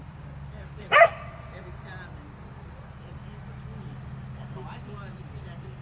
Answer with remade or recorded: recorded